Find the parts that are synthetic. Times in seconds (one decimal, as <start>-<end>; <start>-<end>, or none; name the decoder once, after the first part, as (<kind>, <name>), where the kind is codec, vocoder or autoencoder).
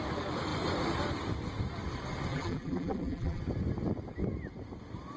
2.3-3.4 (vocoder, BigVGAN v2)